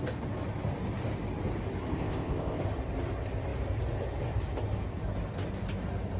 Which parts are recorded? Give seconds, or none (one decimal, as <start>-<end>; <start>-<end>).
0.0-1.9; 2.6-6.2